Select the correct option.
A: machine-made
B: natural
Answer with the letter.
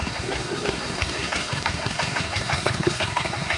A